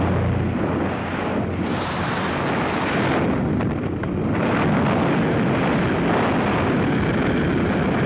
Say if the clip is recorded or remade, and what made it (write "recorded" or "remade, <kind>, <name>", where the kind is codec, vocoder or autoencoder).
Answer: recorded